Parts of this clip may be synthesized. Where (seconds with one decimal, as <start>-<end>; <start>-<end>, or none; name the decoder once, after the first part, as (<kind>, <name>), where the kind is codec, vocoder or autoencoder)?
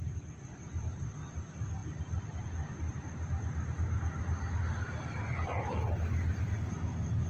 none